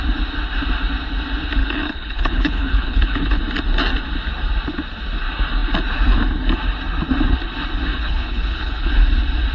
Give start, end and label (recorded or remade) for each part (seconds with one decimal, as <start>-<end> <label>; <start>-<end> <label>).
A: 0.0-1.6 recorded; 1.6-3.4 remade; 3.4-7.9 recorded; 7.9-8.9 remade; 8.9-9.5 recorded